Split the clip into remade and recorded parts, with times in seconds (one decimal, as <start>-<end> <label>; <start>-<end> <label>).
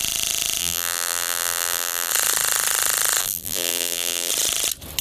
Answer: 0.0-0.6 recorded; 0.6-2.1 remade; 2.1-3.2 recorded; 3.2-4.3 remade; 4.3-5.0 recorded